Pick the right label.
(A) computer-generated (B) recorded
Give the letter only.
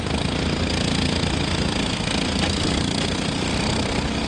B